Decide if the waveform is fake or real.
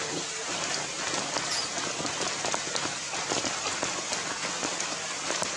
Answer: real